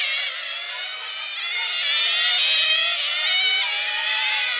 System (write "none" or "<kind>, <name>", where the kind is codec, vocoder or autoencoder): none